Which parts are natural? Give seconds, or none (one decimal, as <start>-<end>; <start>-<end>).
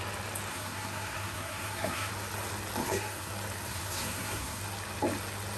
0.0-0.5; 2.1-2.8; 3.3-3.7; 4.6-5.6